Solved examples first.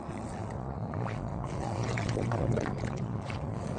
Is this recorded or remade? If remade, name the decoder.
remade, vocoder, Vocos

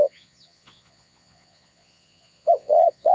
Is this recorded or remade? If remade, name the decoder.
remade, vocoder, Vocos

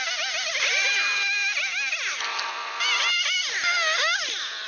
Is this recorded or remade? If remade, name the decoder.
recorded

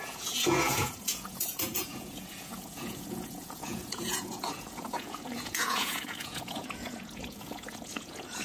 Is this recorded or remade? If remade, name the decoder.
remade, vocoder, Vocos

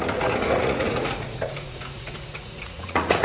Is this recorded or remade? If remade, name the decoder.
remade, vocoder, Vocos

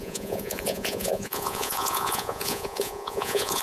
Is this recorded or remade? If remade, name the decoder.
remade, vocoder, Vocos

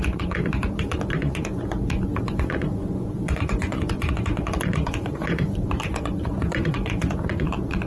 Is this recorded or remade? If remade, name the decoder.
remade, vocoder, Vocos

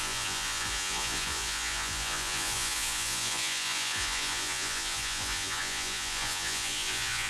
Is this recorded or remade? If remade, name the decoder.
remade, vocoder, Vocos